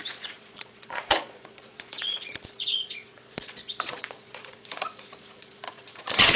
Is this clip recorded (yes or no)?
no